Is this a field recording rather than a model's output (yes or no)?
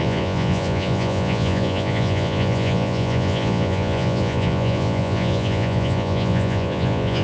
no